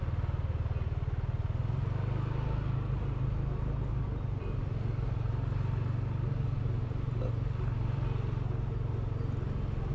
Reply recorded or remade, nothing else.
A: recorded